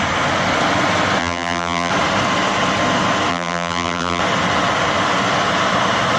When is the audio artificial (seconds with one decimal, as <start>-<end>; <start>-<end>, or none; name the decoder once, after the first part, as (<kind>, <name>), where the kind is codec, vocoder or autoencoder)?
1.2-1.9 (vocoder, BigVGAN v2); 3.3-4.2